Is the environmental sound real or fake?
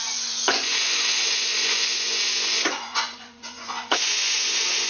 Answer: fake